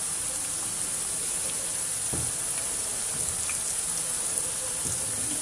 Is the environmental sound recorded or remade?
recorded